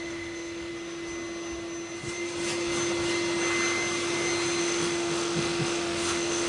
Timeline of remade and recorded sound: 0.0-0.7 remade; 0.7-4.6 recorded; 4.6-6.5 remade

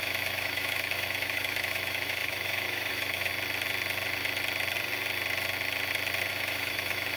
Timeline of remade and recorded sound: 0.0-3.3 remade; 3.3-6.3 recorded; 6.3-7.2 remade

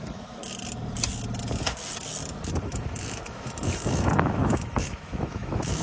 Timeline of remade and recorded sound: 0.0-0.4 remade; 0.4-2.6 recorded; 2.6-5.8 remade